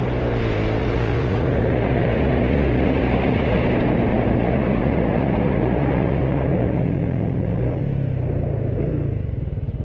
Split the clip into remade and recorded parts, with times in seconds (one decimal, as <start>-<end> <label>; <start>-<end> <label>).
0.0-0.8 recorded; 0.8-3.6 remade; 3.6-4.1 recorded; 4.1-7.8 remade; 7.8-9.8 recorded